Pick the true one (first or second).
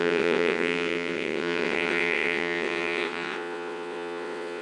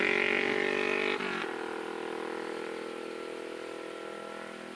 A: second